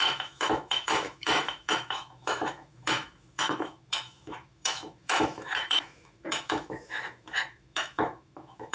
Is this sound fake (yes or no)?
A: yes